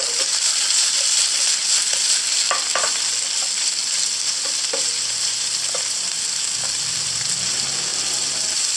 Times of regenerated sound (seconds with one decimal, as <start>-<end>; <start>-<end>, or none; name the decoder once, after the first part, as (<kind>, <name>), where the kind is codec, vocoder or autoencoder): none